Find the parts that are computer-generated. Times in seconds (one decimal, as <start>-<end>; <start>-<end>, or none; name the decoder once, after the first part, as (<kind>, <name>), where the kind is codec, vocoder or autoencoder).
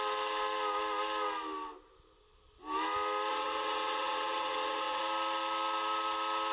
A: 3.3-5.0 (vocoder, WaveNeXt)